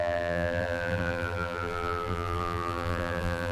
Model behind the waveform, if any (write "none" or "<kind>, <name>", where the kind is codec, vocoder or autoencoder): vocoder, BigVGAN v2